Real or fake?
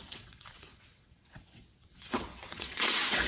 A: fake